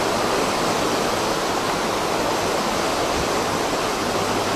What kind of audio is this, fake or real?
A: real